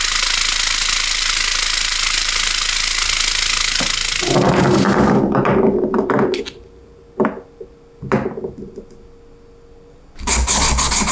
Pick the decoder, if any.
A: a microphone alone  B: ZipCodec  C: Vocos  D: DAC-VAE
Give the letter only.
A